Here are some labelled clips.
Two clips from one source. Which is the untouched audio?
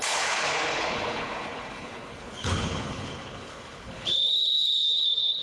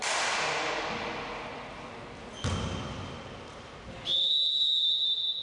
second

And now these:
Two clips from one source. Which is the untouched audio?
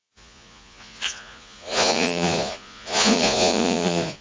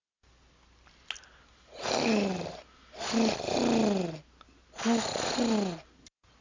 second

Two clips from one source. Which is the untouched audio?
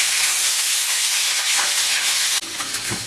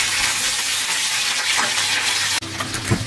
second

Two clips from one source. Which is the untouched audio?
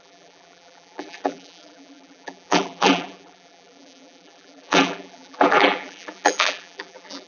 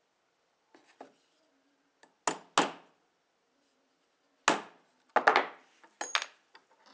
second